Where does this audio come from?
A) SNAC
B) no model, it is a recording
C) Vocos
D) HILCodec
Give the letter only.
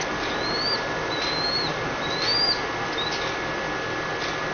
B